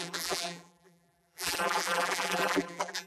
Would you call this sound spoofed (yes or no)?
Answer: yes